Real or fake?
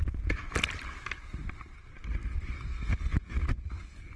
real